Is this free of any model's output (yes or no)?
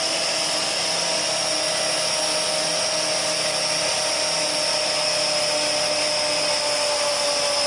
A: yes